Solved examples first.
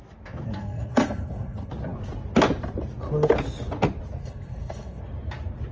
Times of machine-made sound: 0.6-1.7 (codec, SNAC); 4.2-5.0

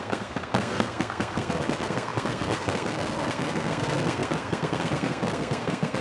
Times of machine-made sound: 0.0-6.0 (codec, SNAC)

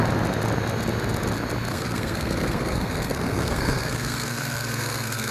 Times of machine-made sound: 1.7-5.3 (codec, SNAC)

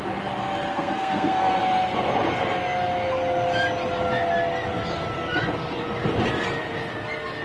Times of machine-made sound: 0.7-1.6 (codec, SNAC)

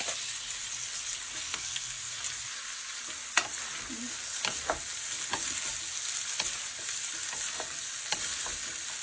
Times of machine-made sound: 1.4-2.1 (codec, SNAC)